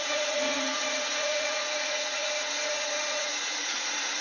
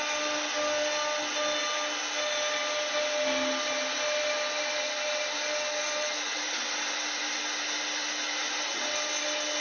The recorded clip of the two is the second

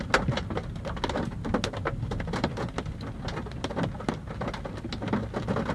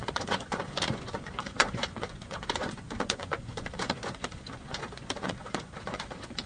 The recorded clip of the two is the first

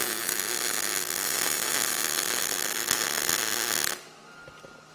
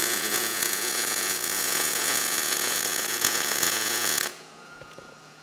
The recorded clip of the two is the first